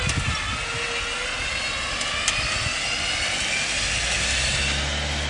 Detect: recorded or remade recorded